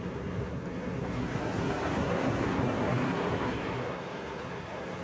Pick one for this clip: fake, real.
fake